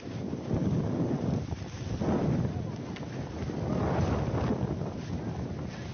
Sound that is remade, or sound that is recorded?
recorded